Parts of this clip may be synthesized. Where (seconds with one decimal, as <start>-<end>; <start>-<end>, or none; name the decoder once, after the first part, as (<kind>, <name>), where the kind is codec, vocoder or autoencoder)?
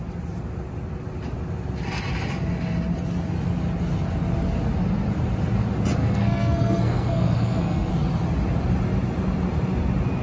6.0-7.9 (codec, SNAC)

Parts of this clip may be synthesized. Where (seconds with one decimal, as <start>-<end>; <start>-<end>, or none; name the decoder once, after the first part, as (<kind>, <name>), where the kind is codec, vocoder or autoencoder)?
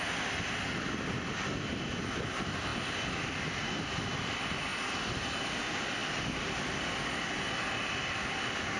none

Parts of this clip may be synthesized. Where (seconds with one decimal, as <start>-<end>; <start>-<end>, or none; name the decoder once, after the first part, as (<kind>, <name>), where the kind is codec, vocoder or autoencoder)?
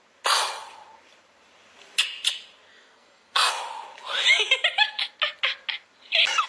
2.7-3.5 (codec, SNAC)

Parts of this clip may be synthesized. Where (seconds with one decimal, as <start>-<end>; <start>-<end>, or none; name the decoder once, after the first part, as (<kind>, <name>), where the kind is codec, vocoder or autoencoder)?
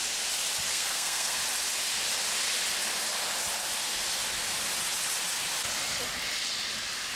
0.7-1.4 (codec, SNAC)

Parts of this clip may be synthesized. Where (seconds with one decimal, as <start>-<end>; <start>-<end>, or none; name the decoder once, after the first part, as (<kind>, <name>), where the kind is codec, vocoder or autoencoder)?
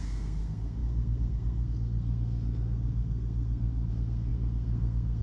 0.0-5.2 (codec, SNAC)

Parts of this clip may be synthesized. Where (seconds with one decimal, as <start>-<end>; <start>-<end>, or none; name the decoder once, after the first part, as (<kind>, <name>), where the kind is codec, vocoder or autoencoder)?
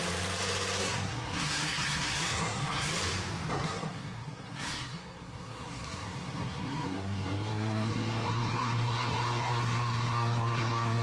0.8-2.9 (codec, SNAC); 3.5-11.0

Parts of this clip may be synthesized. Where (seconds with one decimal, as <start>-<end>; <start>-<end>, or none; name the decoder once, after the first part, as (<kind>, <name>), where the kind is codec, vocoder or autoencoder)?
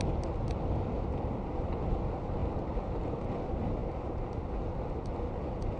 none